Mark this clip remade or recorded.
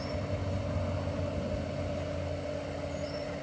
recorded